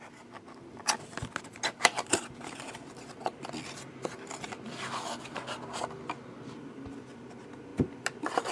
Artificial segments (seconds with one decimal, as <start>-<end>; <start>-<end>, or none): none

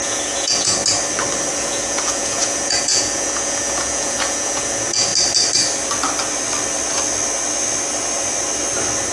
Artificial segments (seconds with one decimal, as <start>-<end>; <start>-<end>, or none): 0.0-0.8; 1.5-5.1

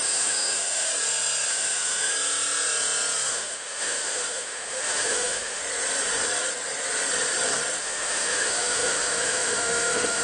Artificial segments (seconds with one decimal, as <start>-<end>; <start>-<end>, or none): 0.0-0.9; 1.5-2.1; 3.3-5.6; 7.8-10.2